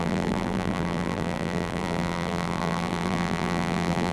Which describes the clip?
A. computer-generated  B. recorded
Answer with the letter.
A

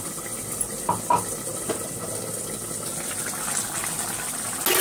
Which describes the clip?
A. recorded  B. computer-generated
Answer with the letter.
A